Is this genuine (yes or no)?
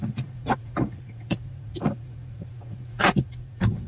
no